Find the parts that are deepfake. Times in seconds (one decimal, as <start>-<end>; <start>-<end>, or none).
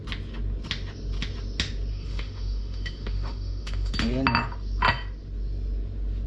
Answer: 1.9-3.9